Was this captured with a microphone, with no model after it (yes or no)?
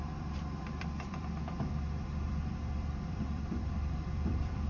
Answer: no